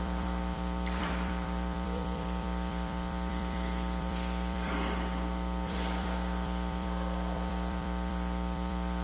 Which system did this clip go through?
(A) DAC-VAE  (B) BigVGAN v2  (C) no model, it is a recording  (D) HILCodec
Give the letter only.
B